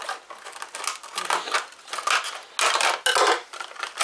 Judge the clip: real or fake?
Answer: real